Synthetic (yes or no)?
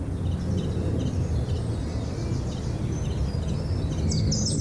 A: no